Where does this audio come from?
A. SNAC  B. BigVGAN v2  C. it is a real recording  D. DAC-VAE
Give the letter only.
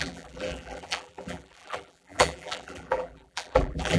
B